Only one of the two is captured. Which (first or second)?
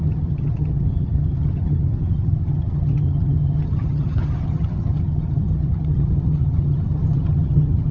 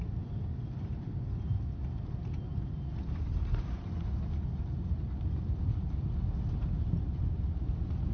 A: second